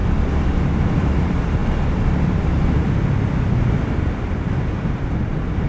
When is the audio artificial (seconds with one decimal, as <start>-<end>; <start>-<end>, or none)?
0.8-1.6; 5.0-5.7